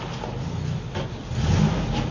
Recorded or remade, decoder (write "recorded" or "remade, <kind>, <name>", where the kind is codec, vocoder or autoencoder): recorded